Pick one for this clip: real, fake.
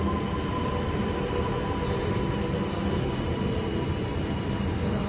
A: real